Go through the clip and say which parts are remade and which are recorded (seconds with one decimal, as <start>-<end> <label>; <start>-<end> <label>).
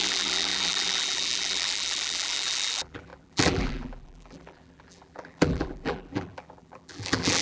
0.0-7.4 remade